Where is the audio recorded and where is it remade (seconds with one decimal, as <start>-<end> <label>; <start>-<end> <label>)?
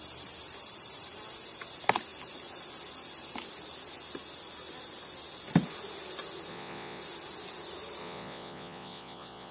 0.0-6.5 recorded; 6.5-7.0 remade; 7.0-8.0 recorded; 8.0-9.5 remade